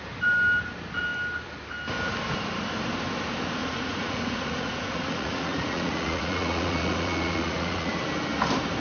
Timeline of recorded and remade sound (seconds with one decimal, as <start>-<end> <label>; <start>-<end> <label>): 0.0-3.6 recorded; 3.6-8.0 remade; 8.0-8.8 recorded